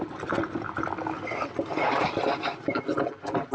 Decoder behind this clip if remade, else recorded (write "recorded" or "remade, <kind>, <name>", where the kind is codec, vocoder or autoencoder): recorded